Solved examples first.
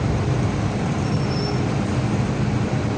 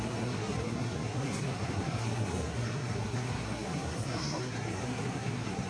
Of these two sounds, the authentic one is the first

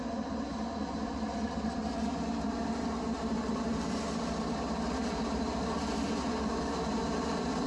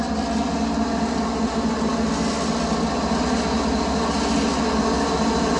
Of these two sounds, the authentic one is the second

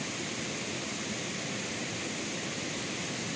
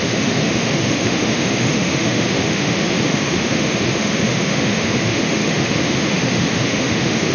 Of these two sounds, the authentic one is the first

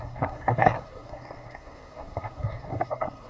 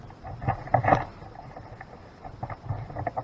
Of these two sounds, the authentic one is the second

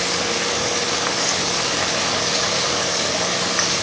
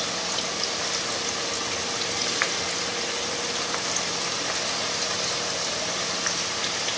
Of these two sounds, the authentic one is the second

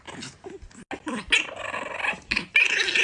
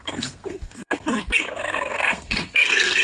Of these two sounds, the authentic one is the first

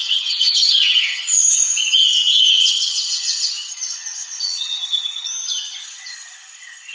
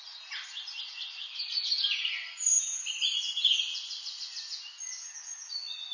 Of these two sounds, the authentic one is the second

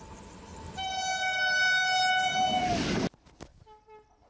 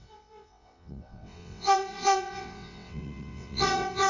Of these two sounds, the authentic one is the first